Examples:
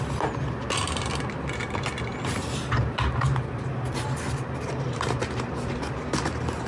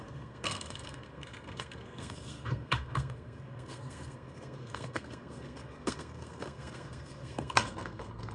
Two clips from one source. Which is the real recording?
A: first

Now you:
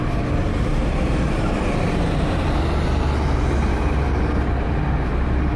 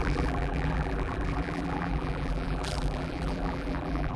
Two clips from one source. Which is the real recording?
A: first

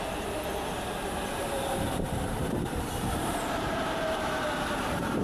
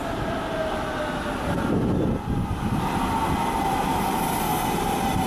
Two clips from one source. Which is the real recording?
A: second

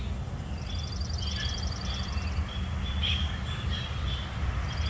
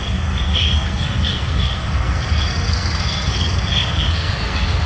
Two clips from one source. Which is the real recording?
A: first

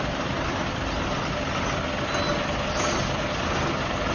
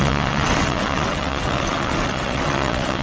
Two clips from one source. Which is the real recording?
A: first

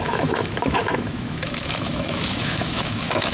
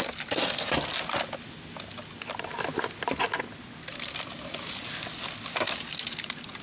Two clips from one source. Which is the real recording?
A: second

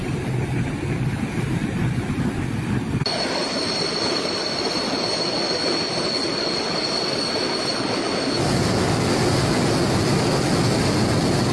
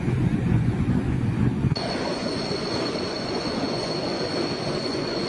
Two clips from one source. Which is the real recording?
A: first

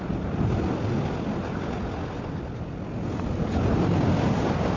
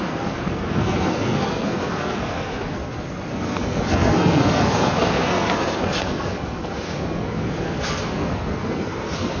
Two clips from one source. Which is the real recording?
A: first